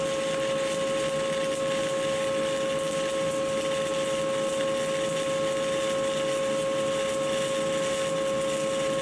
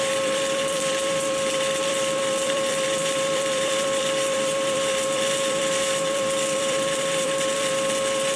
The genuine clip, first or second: first